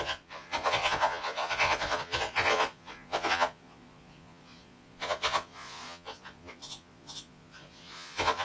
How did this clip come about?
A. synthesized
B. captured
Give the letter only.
A